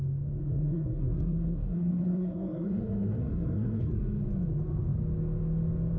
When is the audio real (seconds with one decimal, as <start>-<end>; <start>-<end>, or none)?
0.0-0.4; 4.0-6.0